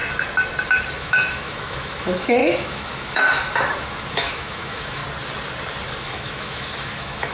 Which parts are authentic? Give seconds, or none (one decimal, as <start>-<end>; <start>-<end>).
0.0-0.9; 5.0-6.0